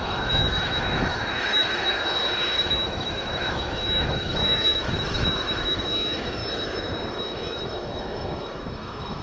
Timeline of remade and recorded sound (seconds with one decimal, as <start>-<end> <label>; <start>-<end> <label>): 0.0-1.9 remade; 1.9-2.6 recorded; 2.6-6.4 remade; 6.4-7.1 recorded; 7.1-9.2 remade